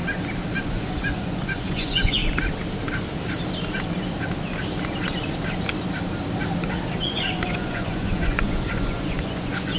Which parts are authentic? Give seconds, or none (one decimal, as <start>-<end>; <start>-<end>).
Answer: 0.0-0.6; 2.2-7.0